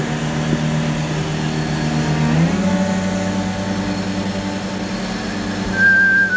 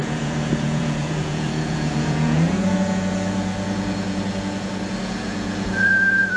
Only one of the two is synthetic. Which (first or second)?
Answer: second